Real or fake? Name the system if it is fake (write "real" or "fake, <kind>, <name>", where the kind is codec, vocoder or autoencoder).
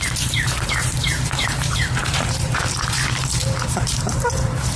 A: fake, vocoder, BigVGAN v2